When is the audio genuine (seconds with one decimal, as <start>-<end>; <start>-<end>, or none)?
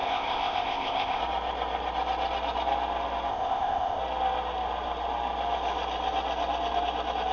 1.2-3.3; 4.0-7.3